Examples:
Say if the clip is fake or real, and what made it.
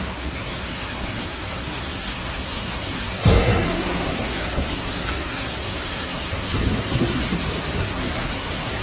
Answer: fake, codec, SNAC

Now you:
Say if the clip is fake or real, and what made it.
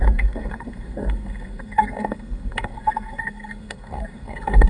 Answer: fake, codec, SNAC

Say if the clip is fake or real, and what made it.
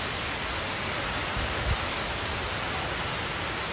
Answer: real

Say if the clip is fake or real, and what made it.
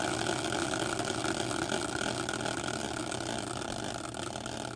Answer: real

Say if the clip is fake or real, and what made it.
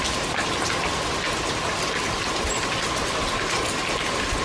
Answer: real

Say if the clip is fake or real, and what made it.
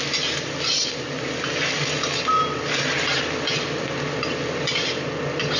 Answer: real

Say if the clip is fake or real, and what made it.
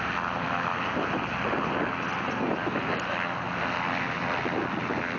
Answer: real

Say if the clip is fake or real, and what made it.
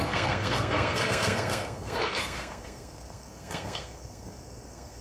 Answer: fake, codec, SNAC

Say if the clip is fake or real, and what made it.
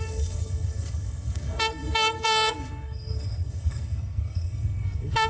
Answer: fake, codec, SNAC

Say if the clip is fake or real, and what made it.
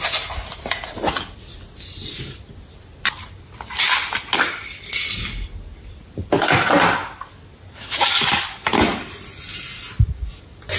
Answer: real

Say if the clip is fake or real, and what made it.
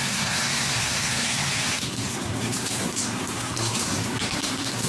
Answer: fake, codec, SNAC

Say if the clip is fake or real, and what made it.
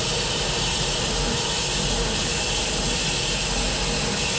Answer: real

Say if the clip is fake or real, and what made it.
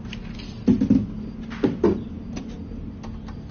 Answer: real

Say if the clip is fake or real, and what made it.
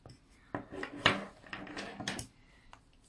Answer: real